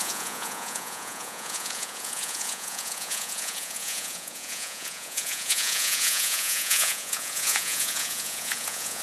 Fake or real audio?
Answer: fake